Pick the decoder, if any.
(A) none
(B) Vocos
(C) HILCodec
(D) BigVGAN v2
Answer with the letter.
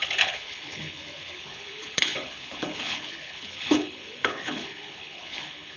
C